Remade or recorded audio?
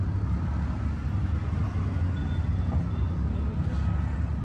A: recorded